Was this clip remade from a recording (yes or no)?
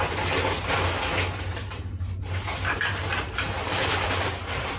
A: no